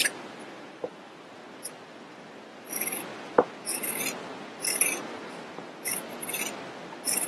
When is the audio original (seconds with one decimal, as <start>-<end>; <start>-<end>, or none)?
1.3-7.3